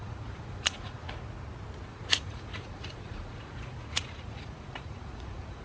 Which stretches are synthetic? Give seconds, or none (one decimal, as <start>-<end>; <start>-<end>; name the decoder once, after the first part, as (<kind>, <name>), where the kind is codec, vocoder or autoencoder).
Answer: 0.0-1.1 (vocoder, Vocos); 1.9-5.6